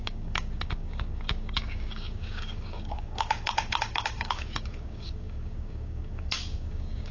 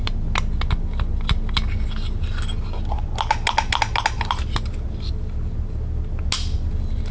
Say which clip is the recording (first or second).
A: second